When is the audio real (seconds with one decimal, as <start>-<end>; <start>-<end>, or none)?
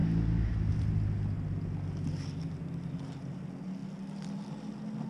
0.0-5.1